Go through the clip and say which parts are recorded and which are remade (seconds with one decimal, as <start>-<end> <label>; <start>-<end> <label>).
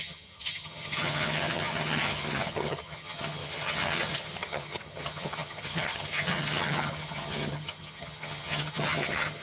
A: 0.0-9.4 remade